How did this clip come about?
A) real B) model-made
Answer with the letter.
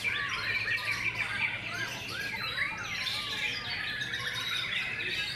A